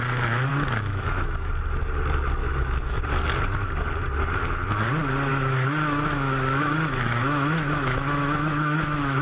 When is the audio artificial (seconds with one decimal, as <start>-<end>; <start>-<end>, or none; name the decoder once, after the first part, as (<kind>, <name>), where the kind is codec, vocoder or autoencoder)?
0.5-1.5 (autoencoder, DAC-VAE); 2.4-3.0; 5.3-9.2